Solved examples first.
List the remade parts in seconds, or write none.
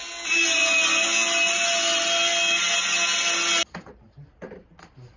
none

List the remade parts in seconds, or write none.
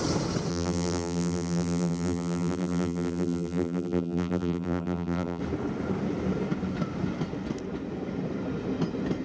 0.5-5.4 (vocoder, BigVGAN v2)